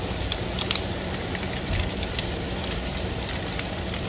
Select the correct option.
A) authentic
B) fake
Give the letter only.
B